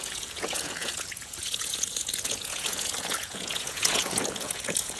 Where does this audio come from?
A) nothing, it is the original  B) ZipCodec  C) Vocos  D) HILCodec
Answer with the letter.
C